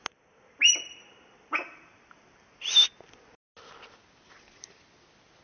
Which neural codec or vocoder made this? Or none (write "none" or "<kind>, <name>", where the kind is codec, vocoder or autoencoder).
none